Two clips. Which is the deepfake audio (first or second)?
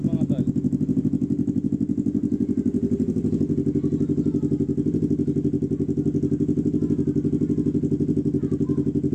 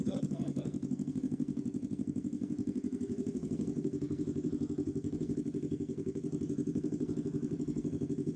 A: second